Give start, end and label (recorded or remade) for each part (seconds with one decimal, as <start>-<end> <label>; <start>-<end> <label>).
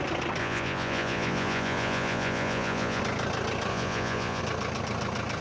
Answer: 0.0-0.4 recorded; 0.4-3.0 remade; 3.0-3.7 recorded; 3.7-4.4 remade; 4.4-5.4 recorded